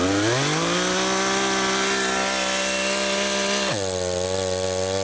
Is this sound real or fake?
real